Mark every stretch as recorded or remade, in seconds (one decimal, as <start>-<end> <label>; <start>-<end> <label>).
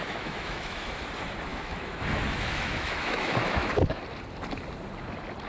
0.0-1.0 remade; 1.0-1.5 recorded; 1.5-4.0 remade; 4.0-5.5 recorded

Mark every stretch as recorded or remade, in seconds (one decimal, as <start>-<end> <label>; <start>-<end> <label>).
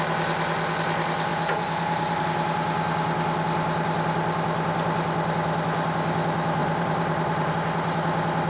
0.0-1.3 recorded; 1.3-2.2 remade; 2.2-6.6 recorded; 6.6-7.5 remade; 7.5-8.5 recorded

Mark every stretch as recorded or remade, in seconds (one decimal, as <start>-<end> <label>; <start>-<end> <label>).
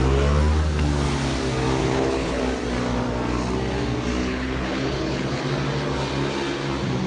0.0-1.8 recorded; 1.8-2.4 remade; 2.4-4.2 recorded; 4.2-5.4 remade; 5.4-7.1 recorded